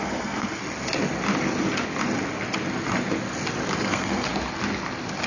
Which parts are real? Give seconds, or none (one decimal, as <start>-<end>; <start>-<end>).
0.6-3.8; 4.3-5.3